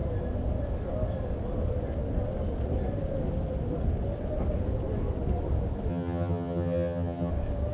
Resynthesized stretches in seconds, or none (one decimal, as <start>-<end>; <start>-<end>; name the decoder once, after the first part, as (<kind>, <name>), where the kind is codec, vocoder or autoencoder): 5.9-7.3 (vocoder, HiFi-GAN)